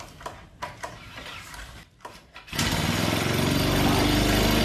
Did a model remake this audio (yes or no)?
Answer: no